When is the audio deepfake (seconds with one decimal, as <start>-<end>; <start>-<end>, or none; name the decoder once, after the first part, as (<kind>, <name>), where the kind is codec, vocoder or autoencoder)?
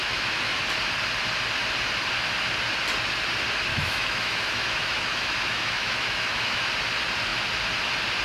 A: 0.0-0.6 (autoencoder, DAC-VAE); 3.7-6.7